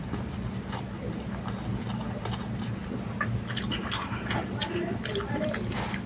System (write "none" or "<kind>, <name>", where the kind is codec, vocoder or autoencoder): none